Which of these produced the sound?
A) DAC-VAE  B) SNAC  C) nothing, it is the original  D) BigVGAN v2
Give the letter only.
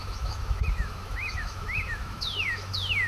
A